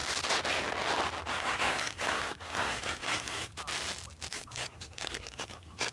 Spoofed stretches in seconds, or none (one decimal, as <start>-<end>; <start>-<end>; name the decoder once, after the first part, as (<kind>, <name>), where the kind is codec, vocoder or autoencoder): 1.3-3.5 (codec, SNAC); 4.3-5.9